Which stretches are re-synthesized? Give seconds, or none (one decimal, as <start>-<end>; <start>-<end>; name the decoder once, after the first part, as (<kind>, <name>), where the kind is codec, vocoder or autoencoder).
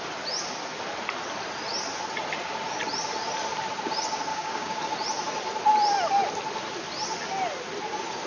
4.3-4.8 (codec, DAC)